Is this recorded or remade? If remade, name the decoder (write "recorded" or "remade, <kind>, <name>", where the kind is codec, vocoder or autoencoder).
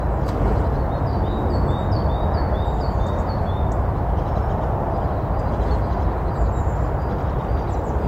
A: recorded